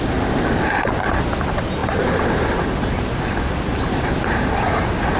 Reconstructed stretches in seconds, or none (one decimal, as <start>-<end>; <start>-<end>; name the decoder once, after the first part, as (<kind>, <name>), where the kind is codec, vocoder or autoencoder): none